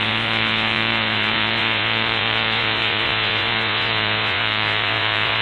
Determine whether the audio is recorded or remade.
remade